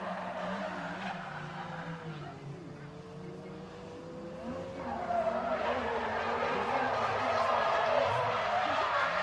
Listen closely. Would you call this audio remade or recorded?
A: recorded